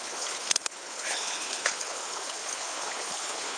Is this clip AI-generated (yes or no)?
yes